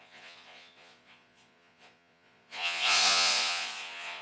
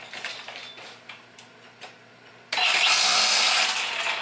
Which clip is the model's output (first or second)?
first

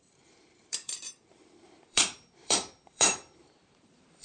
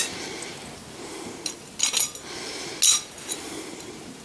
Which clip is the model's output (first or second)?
first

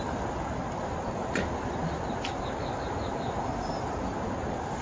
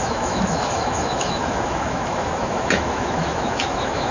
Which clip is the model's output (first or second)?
second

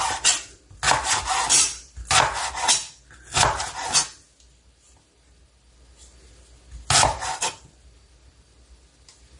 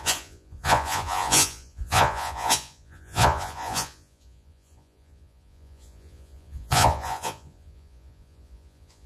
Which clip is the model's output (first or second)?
second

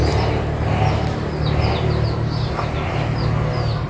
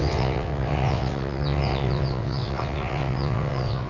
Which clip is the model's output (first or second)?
second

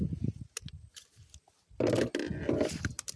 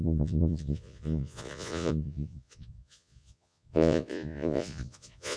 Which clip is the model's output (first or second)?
second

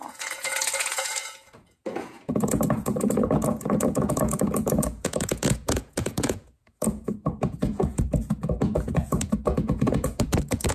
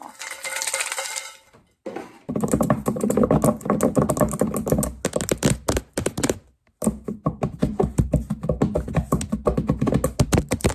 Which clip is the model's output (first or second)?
first